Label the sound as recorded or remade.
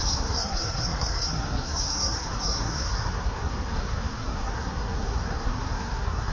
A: remade